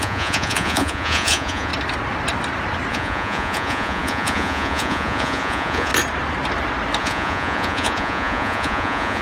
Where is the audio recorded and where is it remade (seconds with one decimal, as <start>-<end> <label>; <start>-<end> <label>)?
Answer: 0.0-1.7 remade; 1.7-2.9 recorded; 2.9-5.9 remade; 5.9-7.0 recorded; 7.0-9.2 remade